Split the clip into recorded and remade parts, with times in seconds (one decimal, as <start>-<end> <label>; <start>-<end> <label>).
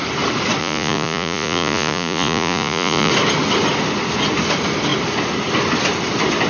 0.0-0.6 recorded; 0.6-3.1 remade; 3.1-6.5 recorded